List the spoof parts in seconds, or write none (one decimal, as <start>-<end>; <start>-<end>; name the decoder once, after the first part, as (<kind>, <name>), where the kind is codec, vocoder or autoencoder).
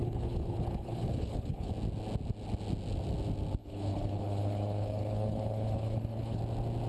0.0-1.7 (codec, HILCodec); 3.6-6.4